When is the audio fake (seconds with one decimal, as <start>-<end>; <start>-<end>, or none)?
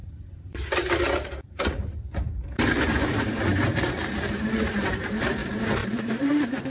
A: 0.0-6.7